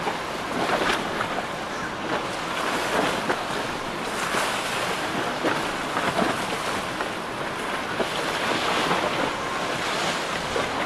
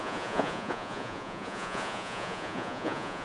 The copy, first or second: second